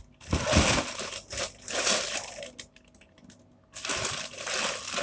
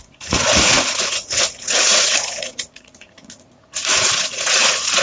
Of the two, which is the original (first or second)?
first